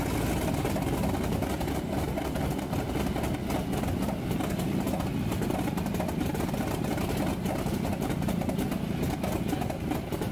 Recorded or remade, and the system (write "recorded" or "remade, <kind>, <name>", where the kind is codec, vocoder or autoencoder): recorded